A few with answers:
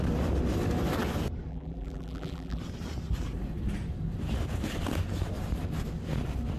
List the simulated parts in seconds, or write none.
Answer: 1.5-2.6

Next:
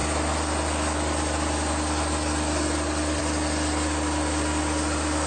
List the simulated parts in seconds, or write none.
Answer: none

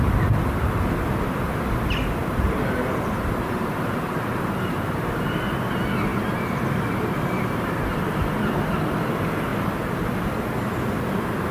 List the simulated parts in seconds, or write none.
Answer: 2.2-4.7

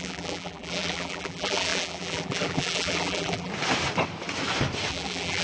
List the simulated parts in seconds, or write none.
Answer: 0.0-3.5; 4.9-5.4